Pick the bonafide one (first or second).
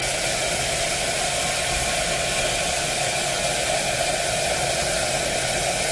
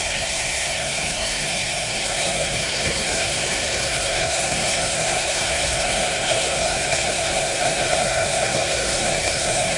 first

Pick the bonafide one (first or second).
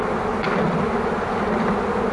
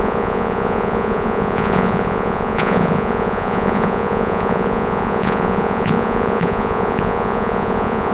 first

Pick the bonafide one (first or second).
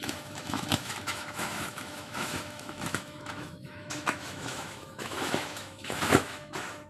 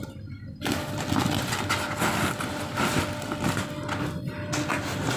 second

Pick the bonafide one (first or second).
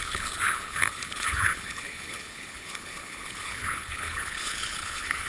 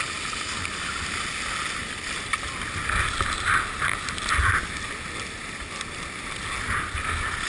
second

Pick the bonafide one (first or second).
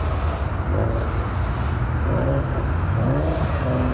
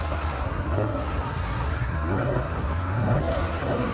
first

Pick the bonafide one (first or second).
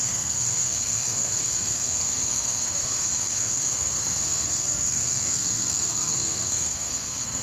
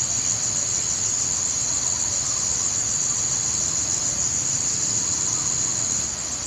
second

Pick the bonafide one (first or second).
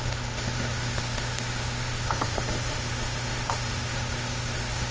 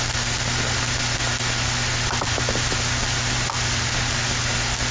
second